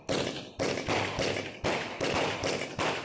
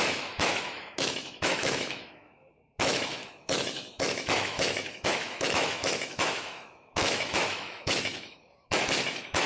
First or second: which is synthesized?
second